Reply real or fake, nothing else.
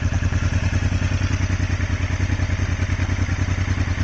real